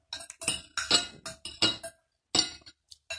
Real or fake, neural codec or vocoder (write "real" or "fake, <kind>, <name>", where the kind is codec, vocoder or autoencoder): real